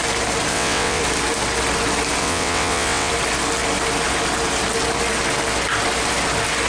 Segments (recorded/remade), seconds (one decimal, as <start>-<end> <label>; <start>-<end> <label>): 0.0-0.5 recorded; 0.5-1.0 remade; 1.0-2.2 recorded; 2.2-3.1 remade; 3.1-6.7 recorded